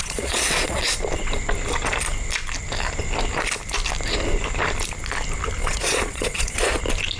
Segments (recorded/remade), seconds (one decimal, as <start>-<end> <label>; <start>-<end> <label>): 0.0-0.8 remade; 0.8-5.6 recorded; 5.6-6.8 remade; 6.8-7.2 recorded